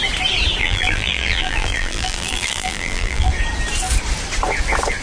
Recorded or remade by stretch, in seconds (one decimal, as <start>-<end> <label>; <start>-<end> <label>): 0.0-0.6 recorded; 0.6-3.3 remade; 3.3-5.0 recorded